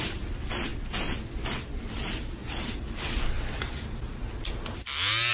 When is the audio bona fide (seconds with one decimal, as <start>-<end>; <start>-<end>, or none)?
0.0-5.3